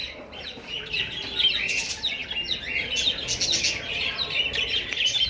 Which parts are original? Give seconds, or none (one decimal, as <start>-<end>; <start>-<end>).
0.0-5.3